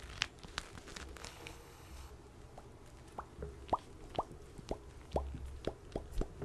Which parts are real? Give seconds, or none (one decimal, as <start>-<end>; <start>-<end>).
0.0-1.2; 2.1-6.4